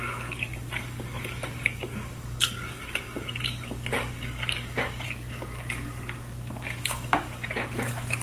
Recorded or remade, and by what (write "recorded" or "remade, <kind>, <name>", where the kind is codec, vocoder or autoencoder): remade, codec, DAC